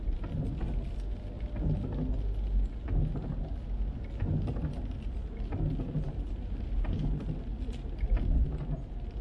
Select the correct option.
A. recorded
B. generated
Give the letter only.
A